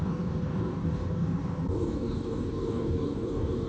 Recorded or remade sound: remade